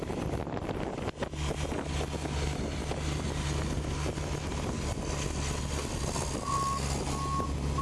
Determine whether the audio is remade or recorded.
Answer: recorded